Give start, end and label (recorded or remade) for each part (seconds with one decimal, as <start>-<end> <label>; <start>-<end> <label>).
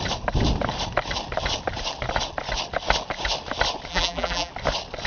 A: 0.0-3.9 recorded; 3.9-4.5 remade; 4.5-5.1 recorded